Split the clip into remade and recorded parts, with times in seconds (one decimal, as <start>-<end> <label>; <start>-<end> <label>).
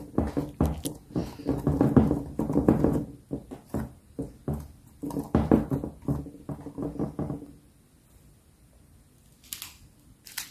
0.0-10.5 recorded